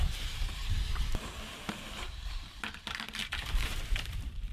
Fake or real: fake